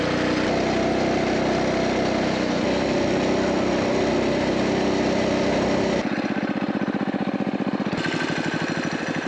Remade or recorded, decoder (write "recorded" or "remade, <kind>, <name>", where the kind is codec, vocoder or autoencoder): recorded